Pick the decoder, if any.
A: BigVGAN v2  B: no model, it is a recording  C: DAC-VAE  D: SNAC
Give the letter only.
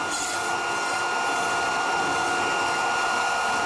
B